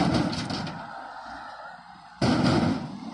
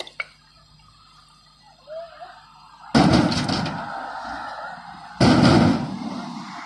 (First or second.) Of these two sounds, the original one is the second